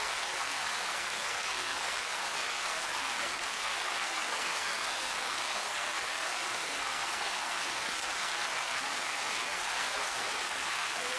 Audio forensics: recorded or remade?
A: remade